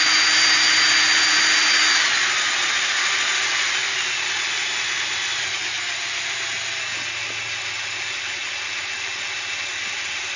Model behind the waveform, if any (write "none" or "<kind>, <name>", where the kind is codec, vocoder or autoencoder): none